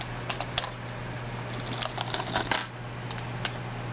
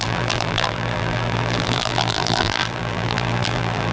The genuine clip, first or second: first